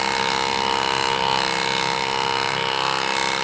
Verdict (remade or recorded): recorded